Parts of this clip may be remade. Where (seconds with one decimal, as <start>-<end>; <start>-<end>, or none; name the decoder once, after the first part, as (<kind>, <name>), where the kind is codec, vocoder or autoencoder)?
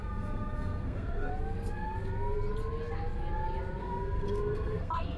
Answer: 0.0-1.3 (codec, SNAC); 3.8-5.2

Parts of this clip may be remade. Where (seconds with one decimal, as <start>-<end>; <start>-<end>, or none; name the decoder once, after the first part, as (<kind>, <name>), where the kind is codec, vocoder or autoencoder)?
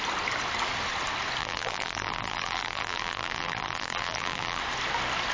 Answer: 1.4-4.6 (vocoder, BigVGAN v2)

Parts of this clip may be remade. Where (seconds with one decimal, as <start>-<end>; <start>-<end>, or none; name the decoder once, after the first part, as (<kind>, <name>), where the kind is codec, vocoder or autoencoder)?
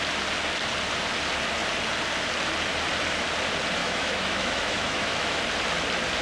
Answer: 3.8-5.4 (autoencoder, DAC-VAE)